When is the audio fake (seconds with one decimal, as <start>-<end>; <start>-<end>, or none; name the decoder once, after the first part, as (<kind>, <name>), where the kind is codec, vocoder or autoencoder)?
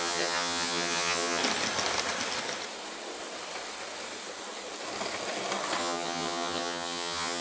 0.0-1.4 (vocoder, HiFi-GAN); 5.8-7.4